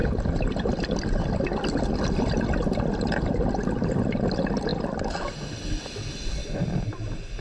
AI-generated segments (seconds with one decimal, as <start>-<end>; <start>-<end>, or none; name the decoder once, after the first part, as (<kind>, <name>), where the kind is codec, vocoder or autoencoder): none